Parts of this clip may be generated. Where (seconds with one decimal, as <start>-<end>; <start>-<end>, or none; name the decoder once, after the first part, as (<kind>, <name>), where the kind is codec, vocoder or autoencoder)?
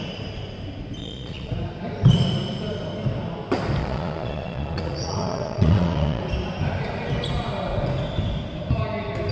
1.0-1.5 (vocoder, Vocos); 3.8-6.2